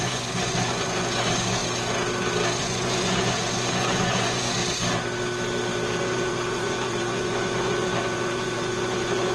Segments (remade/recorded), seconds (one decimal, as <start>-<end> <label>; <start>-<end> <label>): 0.0-1.6 remade; 1.6-2.6 recorded; 2.6-4.6 remade; 4.6-6.0 recorded; 6.0-9.3 remade